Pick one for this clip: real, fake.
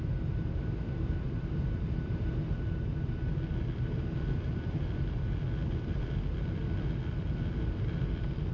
fake